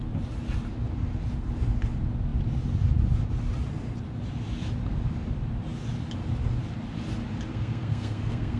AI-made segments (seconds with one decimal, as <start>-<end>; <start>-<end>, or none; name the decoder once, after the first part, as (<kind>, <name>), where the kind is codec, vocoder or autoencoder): 7.5-8.6 (codec, SNAC)